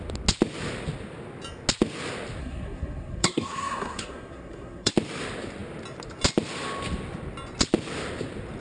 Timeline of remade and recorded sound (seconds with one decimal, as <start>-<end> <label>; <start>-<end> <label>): 0.0-2.4 recorded; 2.4-4.9 remade; 4.9-8.6 recorded